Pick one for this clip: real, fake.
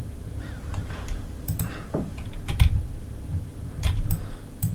fake